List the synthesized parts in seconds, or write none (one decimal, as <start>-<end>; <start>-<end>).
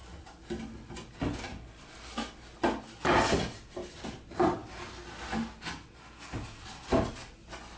none